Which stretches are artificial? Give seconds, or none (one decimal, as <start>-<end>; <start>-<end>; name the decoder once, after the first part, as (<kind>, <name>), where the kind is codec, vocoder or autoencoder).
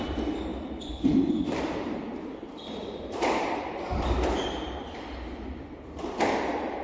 0.0-6.8 (vocoder, BigVGAN v2)